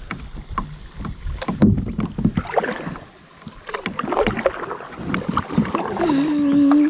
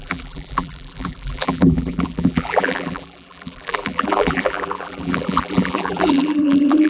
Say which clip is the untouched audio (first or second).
first